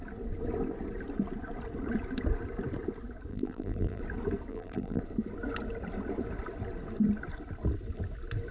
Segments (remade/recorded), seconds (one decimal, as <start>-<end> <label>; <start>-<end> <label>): 0.0-3.3 recorded; 3.3-4.0 remade; 4.0-4.5 recorded; 4.5-5.0 remade; 5.0-8.5 recorded